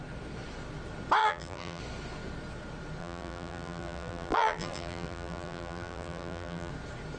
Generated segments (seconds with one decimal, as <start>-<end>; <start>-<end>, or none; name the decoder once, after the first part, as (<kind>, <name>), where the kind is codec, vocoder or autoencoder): 1.2-1.8 (vocoder, BigVGAN v2); 3.0-6.7